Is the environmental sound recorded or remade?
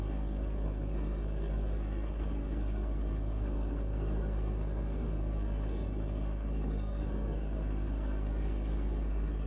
remade